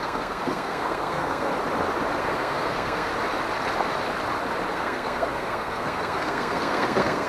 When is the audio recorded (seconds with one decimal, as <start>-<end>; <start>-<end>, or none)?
1.5-2.2; 3.1-4.7